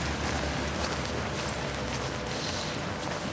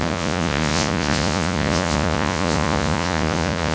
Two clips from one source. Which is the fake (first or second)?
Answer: second